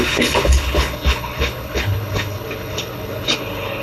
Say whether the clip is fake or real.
fake